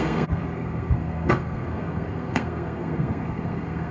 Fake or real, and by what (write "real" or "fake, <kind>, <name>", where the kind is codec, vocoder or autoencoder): fake, codec, SNAC